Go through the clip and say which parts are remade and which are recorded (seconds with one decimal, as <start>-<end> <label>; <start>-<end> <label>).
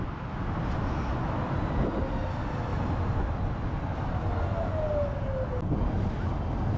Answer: 0.0-6.8 recorded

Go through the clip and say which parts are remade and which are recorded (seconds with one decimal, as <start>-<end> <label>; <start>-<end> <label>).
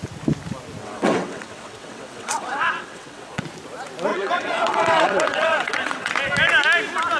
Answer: 0.0-0.8 recorded; 0.8-3.4 remade; 3.4-4.1 recorded; 4.1-6.1 remade; 6.1-7.2 recorded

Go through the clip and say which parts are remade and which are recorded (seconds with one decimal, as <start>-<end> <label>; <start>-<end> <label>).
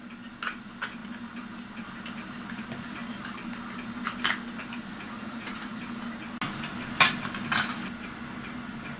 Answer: 0.0-4.9 recorded; 4.9-5.8 remade; 5.8-9.0 recorded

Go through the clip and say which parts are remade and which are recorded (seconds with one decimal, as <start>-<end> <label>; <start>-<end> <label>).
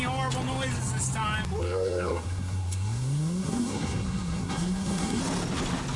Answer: 0.0-1.6 recorded; 1.6-5.2 remade; 5.2-6.0 recorded